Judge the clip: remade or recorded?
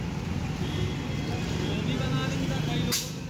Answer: recorded